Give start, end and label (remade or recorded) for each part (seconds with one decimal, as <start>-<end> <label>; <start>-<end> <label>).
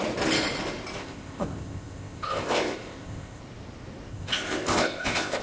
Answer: 0.0-1.0 recorded; 1.0-3.4 remade; 3.4-4.1 recorded; 4.1-5.4 remade